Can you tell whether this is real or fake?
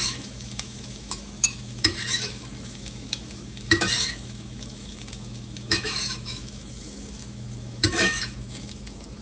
fake